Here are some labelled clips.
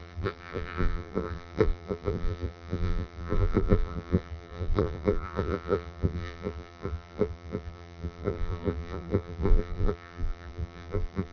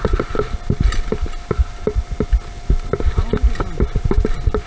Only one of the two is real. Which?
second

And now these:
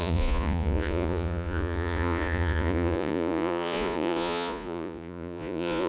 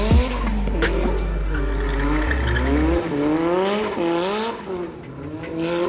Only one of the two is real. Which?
second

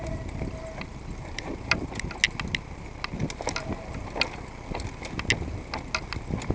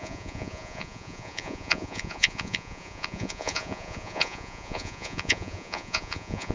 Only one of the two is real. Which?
first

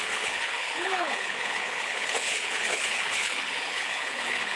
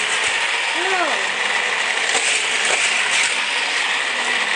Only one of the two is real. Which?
second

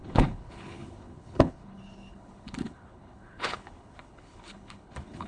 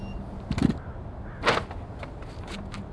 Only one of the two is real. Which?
second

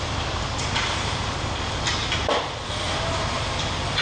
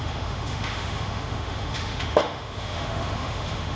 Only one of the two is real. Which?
first